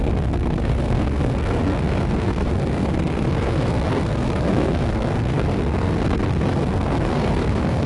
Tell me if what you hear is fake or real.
fake